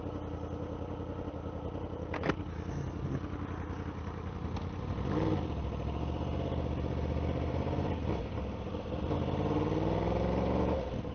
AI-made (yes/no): no